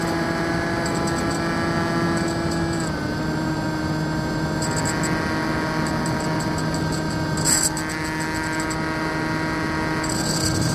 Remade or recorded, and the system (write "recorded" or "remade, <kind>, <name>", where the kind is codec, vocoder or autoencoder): recorded